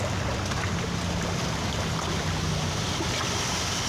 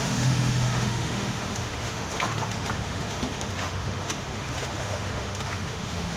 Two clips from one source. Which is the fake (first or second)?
second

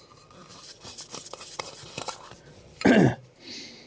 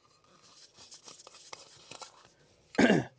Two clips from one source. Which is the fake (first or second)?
first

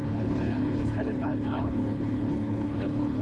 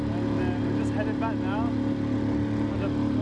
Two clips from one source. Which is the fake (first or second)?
first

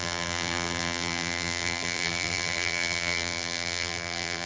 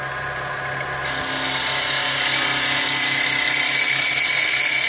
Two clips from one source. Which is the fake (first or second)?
first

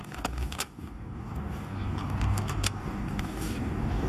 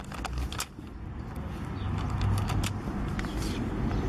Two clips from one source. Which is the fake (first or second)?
first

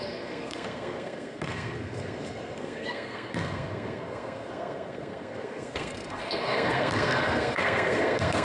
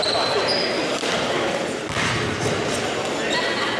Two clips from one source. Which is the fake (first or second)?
first